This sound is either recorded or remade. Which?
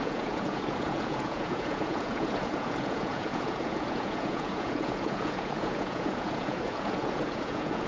remade